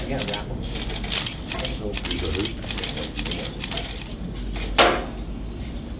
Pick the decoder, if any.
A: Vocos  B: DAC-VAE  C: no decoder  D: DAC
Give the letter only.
C